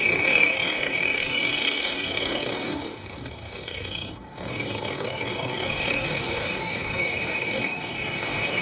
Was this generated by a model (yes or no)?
yes